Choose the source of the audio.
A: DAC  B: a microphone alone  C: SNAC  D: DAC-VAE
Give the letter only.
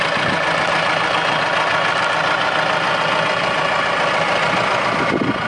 B